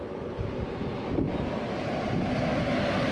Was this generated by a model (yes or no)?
no